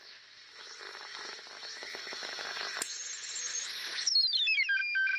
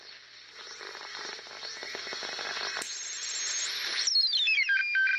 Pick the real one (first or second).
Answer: second